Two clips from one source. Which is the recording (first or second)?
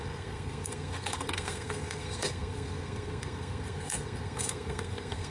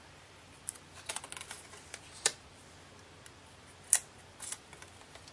second